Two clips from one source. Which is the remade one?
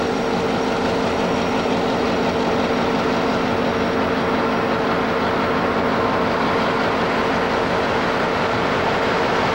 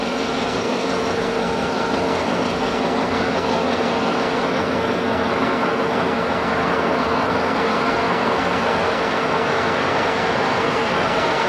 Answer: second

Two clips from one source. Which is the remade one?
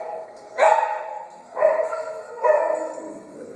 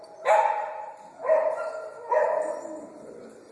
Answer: first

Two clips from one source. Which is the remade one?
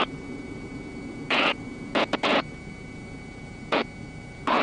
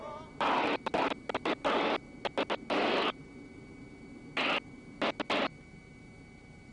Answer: first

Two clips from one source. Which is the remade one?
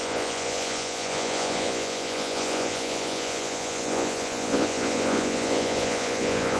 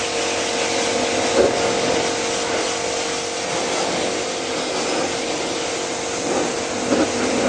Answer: first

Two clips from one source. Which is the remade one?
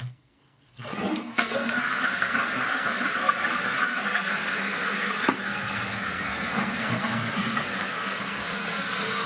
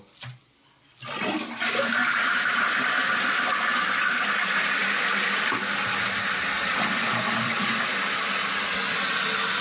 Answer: first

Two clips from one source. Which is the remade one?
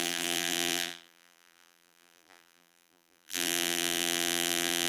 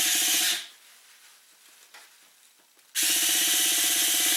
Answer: first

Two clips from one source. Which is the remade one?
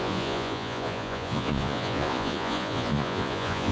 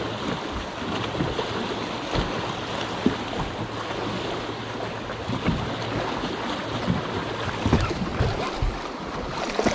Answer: first